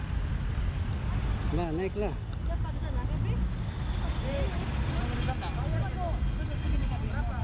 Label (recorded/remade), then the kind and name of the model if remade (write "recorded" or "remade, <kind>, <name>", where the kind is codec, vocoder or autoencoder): recorded